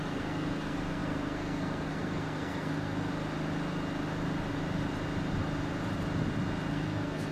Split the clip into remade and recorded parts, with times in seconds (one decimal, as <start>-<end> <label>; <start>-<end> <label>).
0.0-3.1 remade; 3.1-6.7 recorded; 6.7-7.3 remade